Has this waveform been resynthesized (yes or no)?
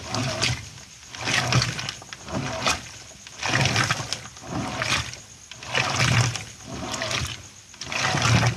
no